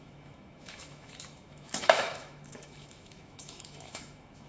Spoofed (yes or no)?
yes